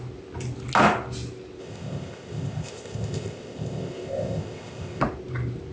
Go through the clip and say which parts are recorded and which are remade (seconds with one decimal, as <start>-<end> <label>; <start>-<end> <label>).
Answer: 0.0-1.6 recorded; 1.6-5.0 remade; 5.0-5.7 recorded